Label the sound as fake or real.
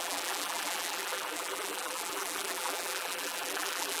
fake